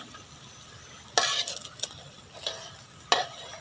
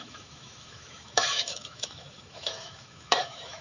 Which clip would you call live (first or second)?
first